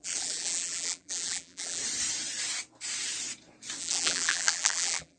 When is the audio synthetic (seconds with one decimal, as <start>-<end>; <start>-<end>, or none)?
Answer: 0.0-1.8; 3.8-5.2

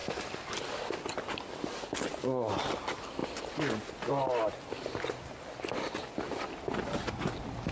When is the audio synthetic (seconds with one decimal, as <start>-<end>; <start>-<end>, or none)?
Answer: 0.0-1.0; 2.1-2.8

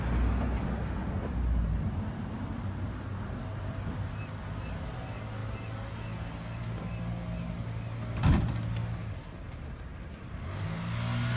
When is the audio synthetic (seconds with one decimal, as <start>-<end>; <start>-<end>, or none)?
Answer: none

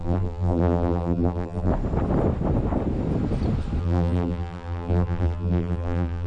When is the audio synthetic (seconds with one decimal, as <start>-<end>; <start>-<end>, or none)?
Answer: 0.0-1.7; 3.8-6.3

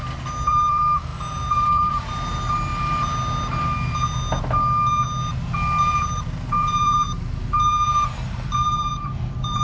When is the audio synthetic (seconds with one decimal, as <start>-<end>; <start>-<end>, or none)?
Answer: 0.5-2.7; 5.8-9.6

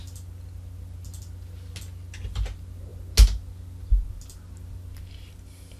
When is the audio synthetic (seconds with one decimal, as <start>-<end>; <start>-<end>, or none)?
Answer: none

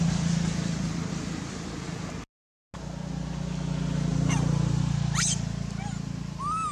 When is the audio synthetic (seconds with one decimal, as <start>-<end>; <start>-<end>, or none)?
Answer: 4.1-4.8